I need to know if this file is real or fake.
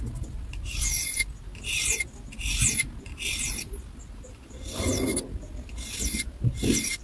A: real